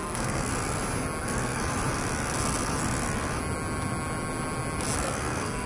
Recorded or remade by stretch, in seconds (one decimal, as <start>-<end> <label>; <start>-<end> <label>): 0.0-0.5 remade; 0.5-1.2 recorded; 1.2-1.6 remade; 1.6-5.0 recorded; 5.0-5.7 remade